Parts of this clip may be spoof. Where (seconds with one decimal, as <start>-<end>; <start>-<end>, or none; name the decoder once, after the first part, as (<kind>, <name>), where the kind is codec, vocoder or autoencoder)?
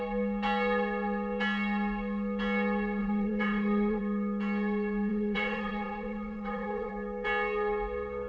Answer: 3.0-4.0 (vocoder, WaveNeXt); 5.1-6.9